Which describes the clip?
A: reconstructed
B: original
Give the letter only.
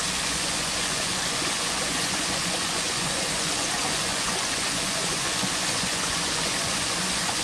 A